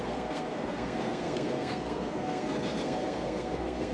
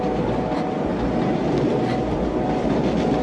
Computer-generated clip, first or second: first